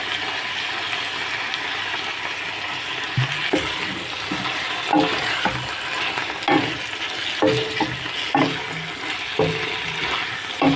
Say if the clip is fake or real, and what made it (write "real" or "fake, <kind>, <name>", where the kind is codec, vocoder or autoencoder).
real